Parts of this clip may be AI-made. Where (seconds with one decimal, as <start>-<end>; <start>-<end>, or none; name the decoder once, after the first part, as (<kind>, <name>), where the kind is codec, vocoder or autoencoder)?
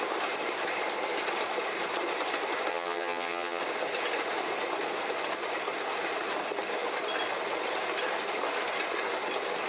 2.7-3.6 (vocoder, HiFi-GAN)